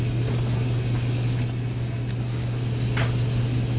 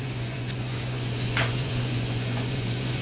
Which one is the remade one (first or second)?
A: second